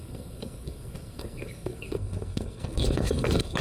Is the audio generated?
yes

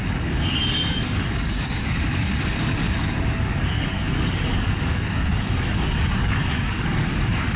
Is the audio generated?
yes